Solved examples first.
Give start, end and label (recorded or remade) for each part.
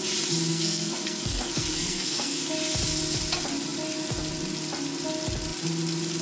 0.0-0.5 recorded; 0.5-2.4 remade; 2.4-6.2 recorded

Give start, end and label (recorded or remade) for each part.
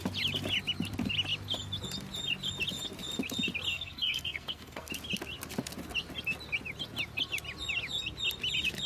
0.0-3.7 recorded; 3.7-4.9 remade; 4.9-8.9 recorded